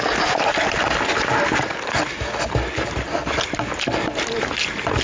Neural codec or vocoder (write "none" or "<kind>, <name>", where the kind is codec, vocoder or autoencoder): none